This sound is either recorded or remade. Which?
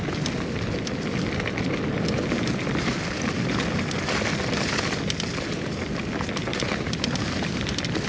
recorded